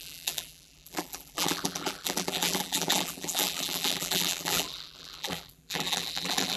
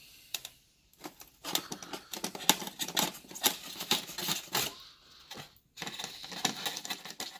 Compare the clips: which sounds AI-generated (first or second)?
first